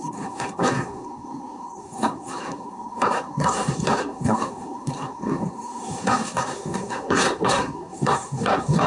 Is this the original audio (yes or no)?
no